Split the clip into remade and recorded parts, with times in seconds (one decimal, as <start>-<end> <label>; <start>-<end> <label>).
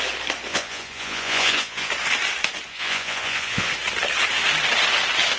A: 0.0-0.5 recorded; 0.5-1.9 remade; 1.9-2.7 recorded; 2.7-3.7 remade; 3.7-5.4 recorded